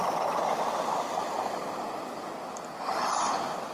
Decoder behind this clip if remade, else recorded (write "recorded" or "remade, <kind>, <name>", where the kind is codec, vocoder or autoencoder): recorded